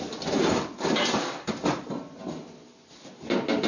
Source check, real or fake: real